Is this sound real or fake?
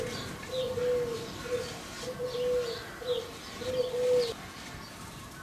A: real